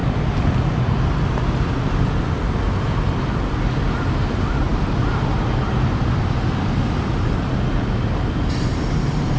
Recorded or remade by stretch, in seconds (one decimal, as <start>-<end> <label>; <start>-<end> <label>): 0.0-9.4 recorded